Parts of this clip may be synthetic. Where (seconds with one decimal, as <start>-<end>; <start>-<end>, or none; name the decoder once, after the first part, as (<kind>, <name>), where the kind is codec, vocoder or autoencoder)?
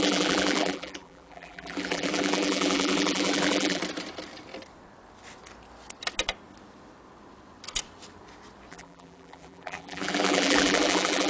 0.0-3.8 (vocoder, BigVGAN v2); 8.7-11.3